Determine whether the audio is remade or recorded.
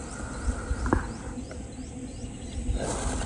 recorded